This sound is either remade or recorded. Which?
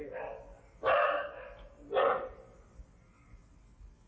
recorded